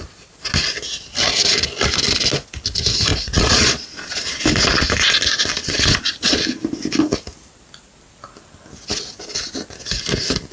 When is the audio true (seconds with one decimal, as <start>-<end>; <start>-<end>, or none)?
0.0-3.1; 4.2-5.5; 6.4-10.5